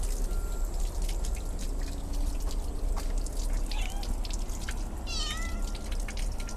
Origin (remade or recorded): recorded